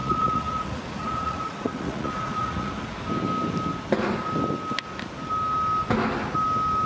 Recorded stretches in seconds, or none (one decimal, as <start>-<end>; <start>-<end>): 2.7-6.9

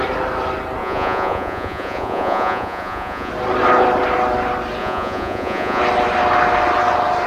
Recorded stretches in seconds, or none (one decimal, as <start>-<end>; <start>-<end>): 0.0-0.8; 3.3-4.8; 5.8-7.3

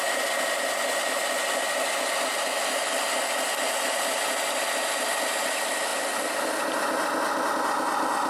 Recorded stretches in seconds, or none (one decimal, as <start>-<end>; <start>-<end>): 0.0-8.3

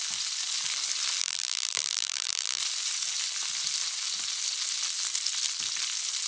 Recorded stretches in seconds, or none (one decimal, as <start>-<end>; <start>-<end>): 0.0-1.2; 2.6-6.3

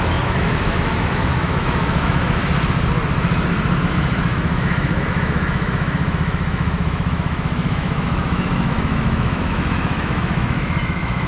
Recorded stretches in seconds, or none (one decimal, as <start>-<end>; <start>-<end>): 2.4-3.8

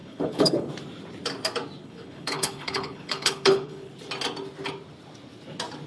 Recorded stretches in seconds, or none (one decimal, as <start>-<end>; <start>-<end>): 0.7-1.8; 3.9-5.9

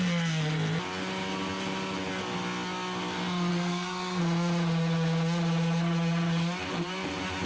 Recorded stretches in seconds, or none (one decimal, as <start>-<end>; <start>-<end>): 0.0-3.5; 4.2-7.5

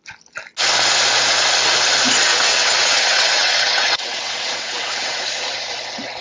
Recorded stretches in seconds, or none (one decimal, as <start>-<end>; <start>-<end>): 0.0-2.3; 5.2-6.2